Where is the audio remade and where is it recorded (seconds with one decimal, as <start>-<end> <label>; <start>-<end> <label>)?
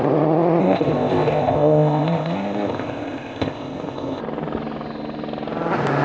0.0-0.6 recorded; 0.6-4.2 remade; 4.2-6.0 recorded